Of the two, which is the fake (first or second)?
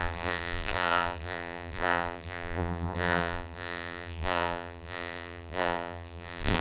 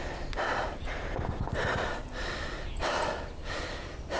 first